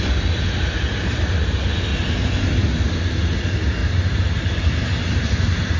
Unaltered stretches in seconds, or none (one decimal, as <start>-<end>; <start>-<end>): 0.0-1.9; 2.5-3.8